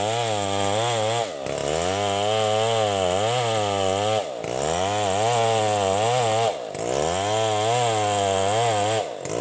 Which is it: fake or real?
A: real